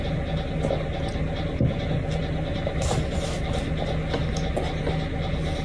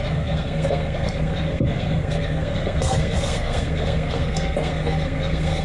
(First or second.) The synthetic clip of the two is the second